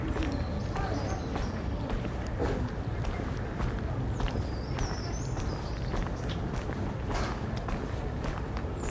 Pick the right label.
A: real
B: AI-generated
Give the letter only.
A